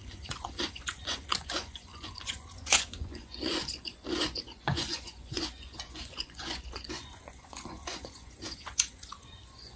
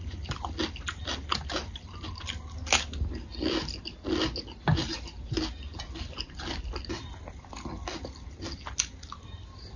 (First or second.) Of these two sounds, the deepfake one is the first